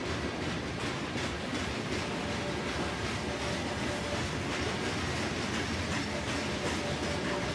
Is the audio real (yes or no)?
yes